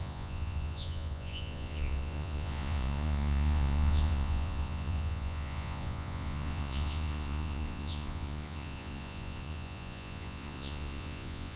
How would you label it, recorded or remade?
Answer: remade